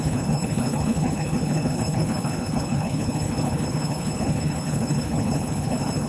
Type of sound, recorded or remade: remade